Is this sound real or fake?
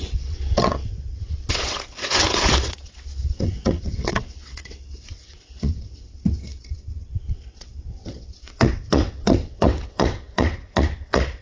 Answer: fake